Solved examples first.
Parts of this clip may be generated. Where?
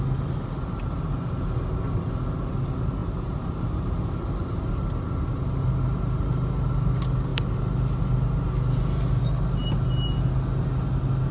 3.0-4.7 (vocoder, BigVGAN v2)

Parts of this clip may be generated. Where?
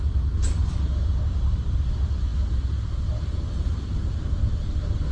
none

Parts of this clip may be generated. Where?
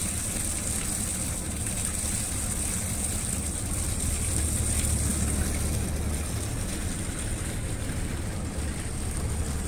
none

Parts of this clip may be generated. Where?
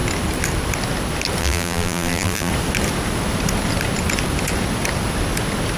1.4-2.5 (vocoder, BigVGAN v2)